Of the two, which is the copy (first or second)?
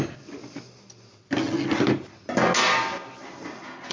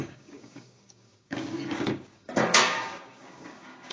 second